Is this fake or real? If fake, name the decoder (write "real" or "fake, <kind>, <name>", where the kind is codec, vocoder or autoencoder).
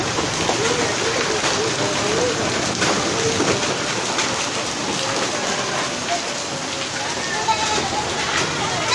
real